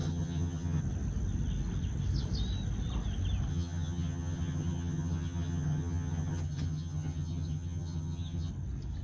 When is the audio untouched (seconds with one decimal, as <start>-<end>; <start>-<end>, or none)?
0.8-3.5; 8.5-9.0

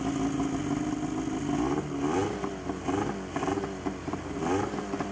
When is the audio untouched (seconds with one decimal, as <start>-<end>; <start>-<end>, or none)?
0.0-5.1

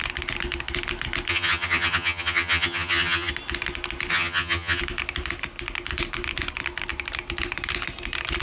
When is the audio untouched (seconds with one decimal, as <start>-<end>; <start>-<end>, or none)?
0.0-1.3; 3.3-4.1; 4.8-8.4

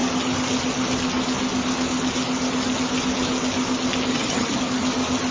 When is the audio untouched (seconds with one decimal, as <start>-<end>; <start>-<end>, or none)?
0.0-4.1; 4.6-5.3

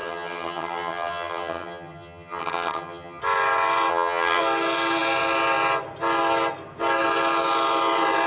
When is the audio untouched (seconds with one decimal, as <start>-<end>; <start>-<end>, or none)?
3.2-3.9; 4.4-8.3

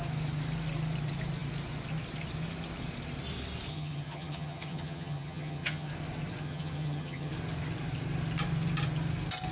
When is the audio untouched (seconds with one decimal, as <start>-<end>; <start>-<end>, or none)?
0.0-3.7; 5.9-6.4; 7.3-9.5